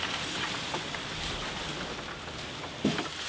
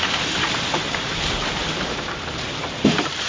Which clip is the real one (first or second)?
first